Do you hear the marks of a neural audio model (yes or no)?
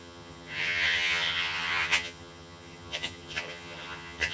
yes